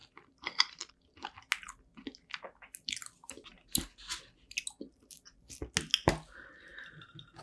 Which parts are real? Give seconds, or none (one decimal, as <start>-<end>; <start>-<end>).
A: 0.9-7.4